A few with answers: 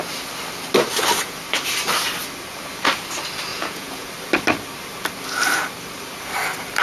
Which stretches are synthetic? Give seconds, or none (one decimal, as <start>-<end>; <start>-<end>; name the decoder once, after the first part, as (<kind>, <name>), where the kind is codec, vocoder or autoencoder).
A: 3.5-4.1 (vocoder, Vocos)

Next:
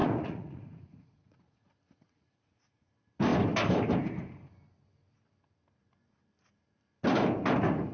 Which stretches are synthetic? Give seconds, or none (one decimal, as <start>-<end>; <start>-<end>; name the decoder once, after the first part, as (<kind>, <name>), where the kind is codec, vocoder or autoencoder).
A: 0.0-2.9 (vocoder, Vocos)

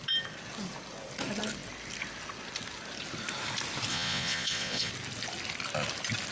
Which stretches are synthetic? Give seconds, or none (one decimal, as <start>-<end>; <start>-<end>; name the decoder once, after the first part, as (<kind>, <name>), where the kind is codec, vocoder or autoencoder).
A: 3.9-4.9 (vocoder, Vocos)

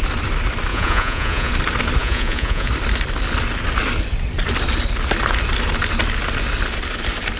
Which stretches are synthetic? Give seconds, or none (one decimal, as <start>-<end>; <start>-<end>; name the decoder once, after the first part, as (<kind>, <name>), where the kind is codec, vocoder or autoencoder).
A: 0.7-1.5 (vocoder, Vocos); 2.0-2.7